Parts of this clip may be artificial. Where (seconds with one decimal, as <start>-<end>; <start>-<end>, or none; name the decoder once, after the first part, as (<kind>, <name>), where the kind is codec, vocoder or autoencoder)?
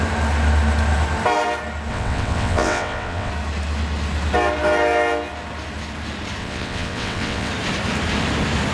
1.9-3.3 (vocoder, WaveNeXt); 6.4-7.5